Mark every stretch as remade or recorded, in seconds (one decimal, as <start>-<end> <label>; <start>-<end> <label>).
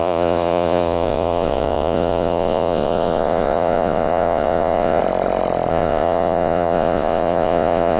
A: 0.0-5.0 remade; 5.0-5.7 recorded; 5.7-8.0 remade